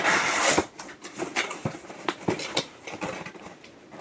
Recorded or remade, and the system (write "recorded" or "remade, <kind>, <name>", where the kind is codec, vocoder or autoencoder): remade, vocoder, BigVGAN v2